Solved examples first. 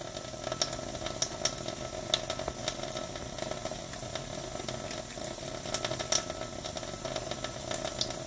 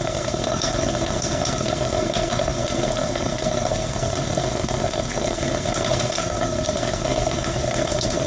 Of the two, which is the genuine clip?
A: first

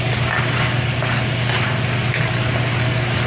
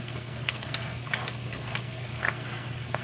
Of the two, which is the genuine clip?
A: first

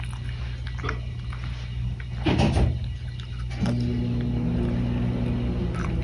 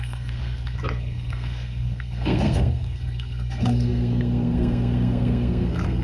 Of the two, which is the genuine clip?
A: first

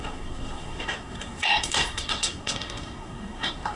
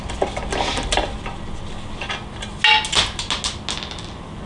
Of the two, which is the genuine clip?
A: second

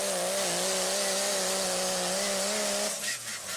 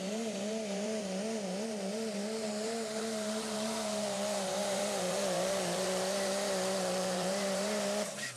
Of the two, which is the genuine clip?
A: first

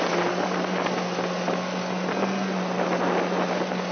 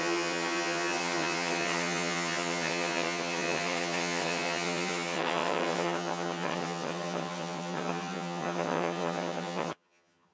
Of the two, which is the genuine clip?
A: first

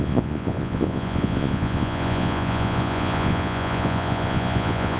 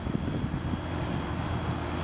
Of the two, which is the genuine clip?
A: second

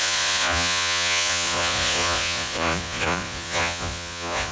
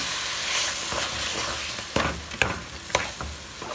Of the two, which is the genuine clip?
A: second